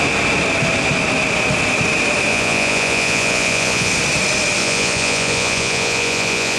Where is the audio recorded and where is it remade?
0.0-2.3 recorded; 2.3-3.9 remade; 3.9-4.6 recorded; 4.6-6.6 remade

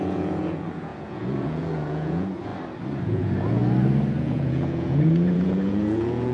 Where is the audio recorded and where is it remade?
0.0-2.5 remade; 2.5-3.0 recorded; 3.0-3.6 remade; 3.6-4.2 recorded; 4.2-6.3 remade